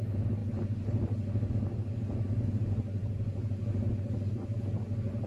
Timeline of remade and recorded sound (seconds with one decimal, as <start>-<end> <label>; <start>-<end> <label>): 0.0-5.3 recorded